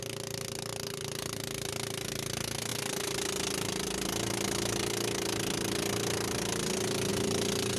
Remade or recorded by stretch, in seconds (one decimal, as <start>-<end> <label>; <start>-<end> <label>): 0.0-7.8 recorded

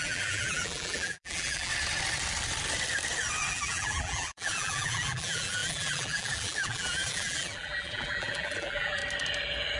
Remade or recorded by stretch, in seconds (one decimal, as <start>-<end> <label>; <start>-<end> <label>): 0.0-1.7 remade; 1.7-3.5 recorded; 3.5-9.0 remade; 9.0-9.8 recorded

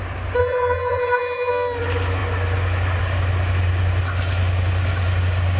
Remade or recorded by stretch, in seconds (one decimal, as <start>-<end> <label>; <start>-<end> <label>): 0.0-0.4 recorded; 0.4-1.5 remade; 1.5-5.6 recorded